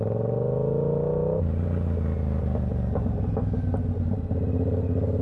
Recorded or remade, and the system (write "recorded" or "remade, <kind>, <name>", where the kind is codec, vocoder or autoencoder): recorded